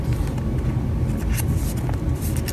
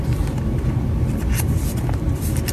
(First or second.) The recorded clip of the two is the first